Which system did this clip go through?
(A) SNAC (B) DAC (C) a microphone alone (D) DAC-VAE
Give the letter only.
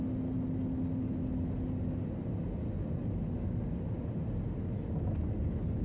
C